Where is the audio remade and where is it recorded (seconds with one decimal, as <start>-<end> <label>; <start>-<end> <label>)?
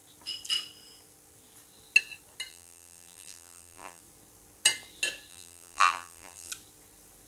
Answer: 0.0-2.5 recorded; 2.5-4.0 remade; 4.0-5.3 recorded; 5.3-6.5 remade; 6.5-7.3 recorded